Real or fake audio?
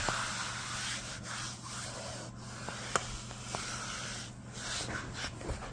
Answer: real